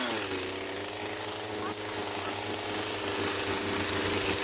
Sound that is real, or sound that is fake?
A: real